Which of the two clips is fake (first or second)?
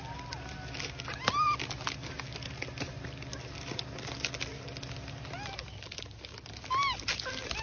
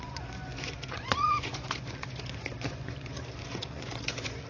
second